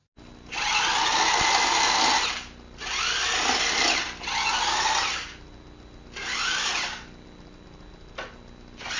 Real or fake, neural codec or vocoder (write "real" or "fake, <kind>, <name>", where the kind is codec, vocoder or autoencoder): real